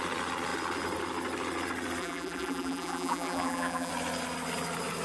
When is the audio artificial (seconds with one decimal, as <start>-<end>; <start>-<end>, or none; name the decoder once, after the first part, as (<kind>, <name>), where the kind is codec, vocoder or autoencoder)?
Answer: 2.0-3.9 (vocoder, BigVGAN v2)